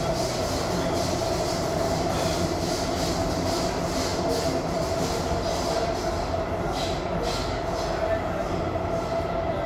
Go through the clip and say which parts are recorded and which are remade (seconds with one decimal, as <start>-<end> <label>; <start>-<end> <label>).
0.0-9.7 recorded